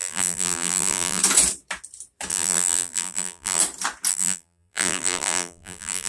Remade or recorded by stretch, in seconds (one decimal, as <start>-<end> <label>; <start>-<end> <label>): 0.0-1.2 remade; 1.2-2.3 recorded; 2.3-3.6 remade; 3.6-4.1 recorded; 4.1-6.1 remade